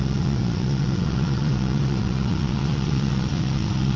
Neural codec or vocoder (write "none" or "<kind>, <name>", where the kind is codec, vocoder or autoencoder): vocoder, WaveNeXt